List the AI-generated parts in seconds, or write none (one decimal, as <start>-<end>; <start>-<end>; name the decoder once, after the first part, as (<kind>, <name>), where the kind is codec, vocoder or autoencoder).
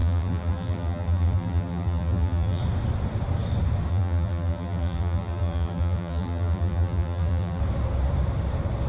0.0-2.6 (vocoder, BigVGAN v2); 3.9-7.6